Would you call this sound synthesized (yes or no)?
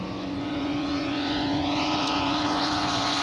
yes